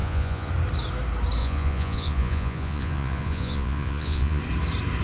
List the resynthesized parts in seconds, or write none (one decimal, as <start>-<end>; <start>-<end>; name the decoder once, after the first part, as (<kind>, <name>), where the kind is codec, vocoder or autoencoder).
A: 0.0-0.5 (vocoder, Vocos); 1.4-4.4